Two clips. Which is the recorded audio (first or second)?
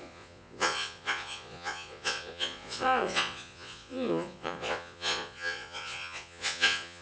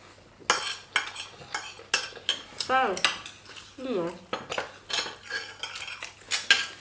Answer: second